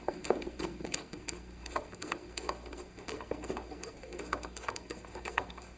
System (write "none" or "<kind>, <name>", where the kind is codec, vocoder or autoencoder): codec, SNAC